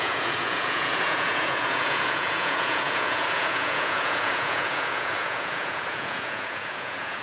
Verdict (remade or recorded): remade